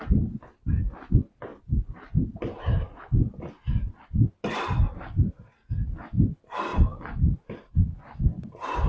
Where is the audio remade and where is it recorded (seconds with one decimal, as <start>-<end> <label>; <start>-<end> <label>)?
0.0-1.5 recorded; 1.5-3.0 remade; 3.0-6.7 recorded; 6.7-7.7 remade; 7.7-8.9 recorded